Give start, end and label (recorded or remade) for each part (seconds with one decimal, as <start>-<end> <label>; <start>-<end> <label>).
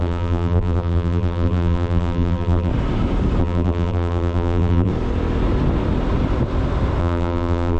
0.0-2.7 remade; 2.7-3.4 recorded; 3.4-4.9 remade; 4.9-7.0 recorded; 7.0-7.8 remade